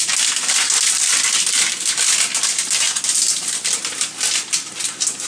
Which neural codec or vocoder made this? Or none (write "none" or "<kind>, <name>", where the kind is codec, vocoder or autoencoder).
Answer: none